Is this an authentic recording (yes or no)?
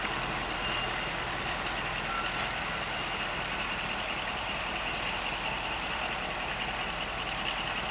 yes